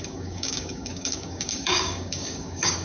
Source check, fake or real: fake